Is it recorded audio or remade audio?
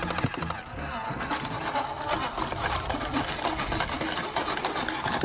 recorded